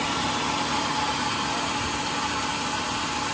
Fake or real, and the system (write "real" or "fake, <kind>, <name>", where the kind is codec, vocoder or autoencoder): real